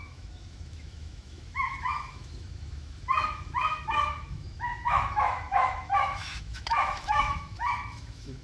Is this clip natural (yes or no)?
no